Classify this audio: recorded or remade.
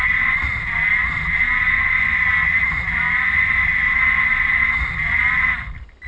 recorded